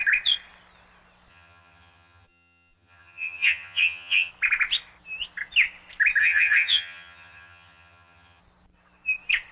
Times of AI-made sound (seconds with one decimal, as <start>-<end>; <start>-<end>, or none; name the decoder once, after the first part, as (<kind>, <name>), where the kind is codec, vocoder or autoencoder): 1.3-4.3 (vocoder, HiFi-GAN); 6.2-8.4